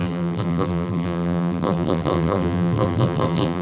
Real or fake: fake